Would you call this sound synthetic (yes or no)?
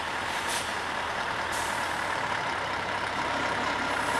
yes